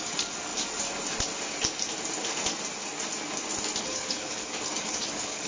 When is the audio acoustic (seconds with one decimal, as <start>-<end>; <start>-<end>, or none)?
0.5-3.8